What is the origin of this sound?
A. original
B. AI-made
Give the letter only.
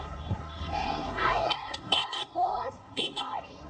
B